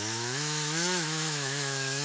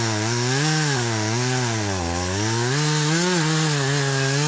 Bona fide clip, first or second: second